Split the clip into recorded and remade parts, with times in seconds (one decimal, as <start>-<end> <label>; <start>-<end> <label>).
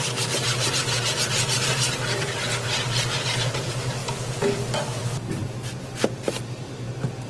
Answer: 0.0-7.3 recorded